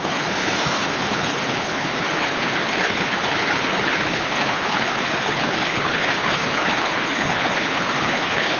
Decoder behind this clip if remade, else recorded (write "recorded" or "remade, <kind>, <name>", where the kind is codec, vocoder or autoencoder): remade, codec, HILCodec